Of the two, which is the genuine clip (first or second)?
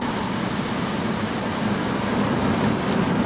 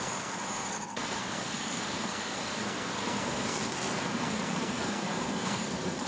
first